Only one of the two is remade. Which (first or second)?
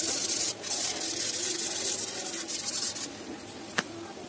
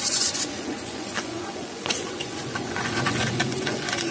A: second